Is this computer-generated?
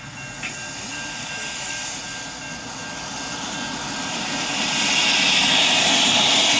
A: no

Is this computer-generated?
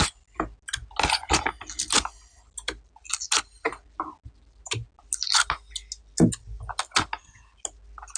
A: no